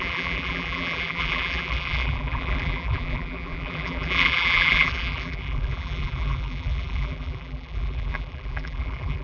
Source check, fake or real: fake